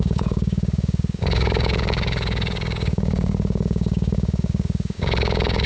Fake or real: fake